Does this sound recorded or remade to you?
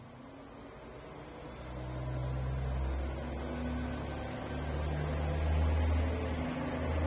recorded